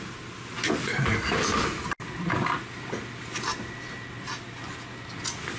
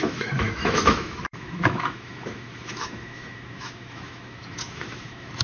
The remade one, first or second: second